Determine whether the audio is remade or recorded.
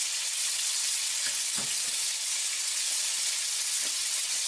remade